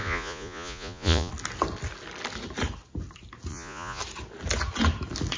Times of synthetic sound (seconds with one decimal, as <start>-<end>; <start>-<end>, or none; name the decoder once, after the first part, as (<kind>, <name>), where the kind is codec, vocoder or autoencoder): 0.0-1.3 (vocoder, Vocos); 3.5-4.0